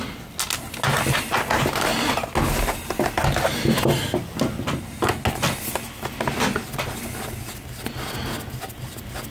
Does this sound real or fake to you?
real